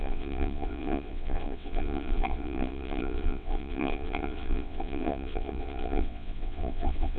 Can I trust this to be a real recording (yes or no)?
no